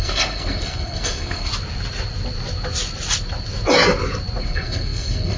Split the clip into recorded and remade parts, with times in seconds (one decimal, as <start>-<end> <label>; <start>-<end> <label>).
0.0-1.5 remade; 1.5-4.4 recorded; 4.4-5.4 remade

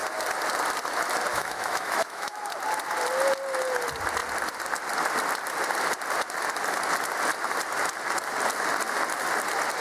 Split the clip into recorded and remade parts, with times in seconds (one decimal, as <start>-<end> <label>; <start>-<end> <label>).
0.0-1.3 recorded; 1.3-2.4 remade; 2.4-9.8 recorded